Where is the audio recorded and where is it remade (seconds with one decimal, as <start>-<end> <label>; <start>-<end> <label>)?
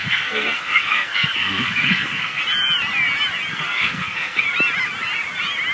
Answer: 0.0-2.4 remade; 2.4-3.5 recorded; 3.5-4.4 remade; 4.4-5.7 recorded